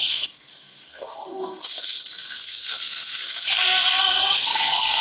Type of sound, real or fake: fake